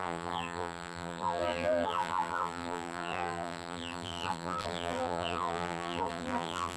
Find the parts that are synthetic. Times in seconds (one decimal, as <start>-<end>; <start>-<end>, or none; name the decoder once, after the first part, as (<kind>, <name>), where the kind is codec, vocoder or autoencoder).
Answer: 0.0-6.8 (vocoder, BigVGAN v2)